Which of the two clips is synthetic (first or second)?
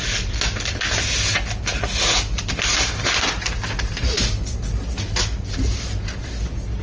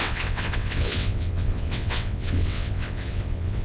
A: second